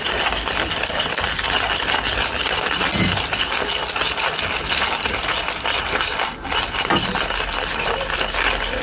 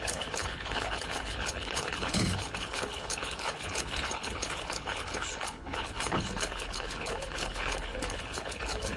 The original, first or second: first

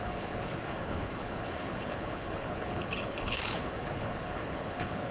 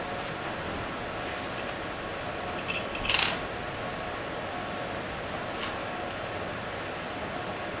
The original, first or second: second